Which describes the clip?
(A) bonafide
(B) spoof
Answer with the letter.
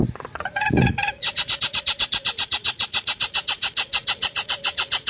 B